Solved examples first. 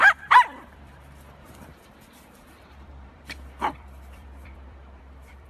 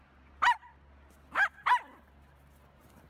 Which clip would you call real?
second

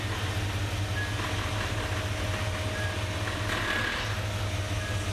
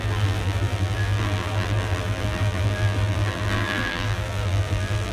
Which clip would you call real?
first